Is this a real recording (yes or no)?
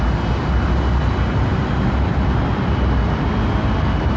yes